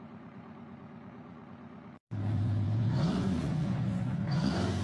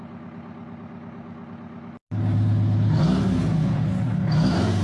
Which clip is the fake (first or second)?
first